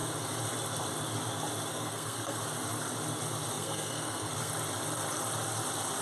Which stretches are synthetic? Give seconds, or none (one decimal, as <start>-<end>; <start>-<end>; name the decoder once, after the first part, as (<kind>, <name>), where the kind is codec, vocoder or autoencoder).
1.7-2.4 (codec, SNAC); 3.5-4.5